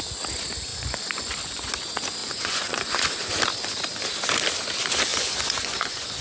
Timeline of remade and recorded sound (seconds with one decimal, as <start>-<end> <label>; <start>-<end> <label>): 0.0-0.7 recorded; 0.7-1.7 remade; 1.7-2.2 recorded; 2.2-3.3 remade; 3.3-5.1 recorded; 5.1-6.2 remade